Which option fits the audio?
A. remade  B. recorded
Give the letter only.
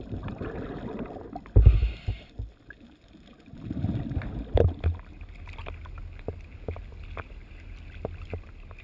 B